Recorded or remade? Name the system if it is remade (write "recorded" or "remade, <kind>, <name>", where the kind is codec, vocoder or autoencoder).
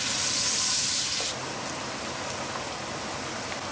recorded